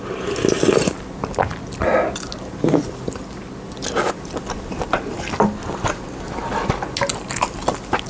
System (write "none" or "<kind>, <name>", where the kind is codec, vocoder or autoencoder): none